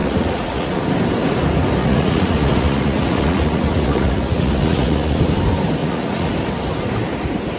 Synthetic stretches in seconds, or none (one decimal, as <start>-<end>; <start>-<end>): 0.0-0.8; 1.8-5.2; 5.8-6.3